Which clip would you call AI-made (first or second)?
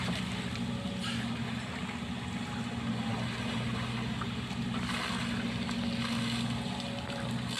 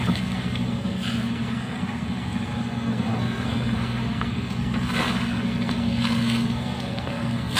second